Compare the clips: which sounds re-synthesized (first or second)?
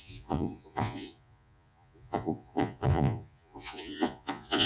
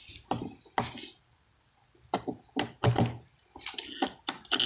first